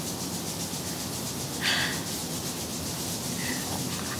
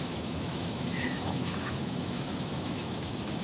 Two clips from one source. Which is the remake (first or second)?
second